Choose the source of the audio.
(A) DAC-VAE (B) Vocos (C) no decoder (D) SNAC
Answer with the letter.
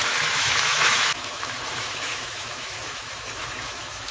A